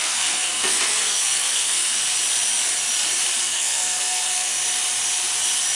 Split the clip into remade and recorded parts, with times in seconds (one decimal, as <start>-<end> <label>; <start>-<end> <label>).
0.0-2.0 remade; 2.0-3.4 recorded; 3.4-4.5 remade; 4.5-5.8 recorded